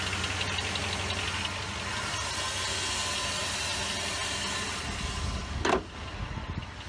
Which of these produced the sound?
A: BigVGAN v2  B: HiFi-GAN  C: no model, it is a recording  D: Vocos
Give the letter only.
C